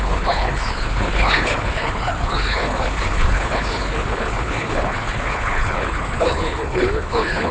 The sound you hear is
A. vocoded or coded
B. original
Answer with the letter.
A